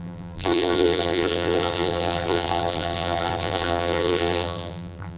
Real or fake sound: fake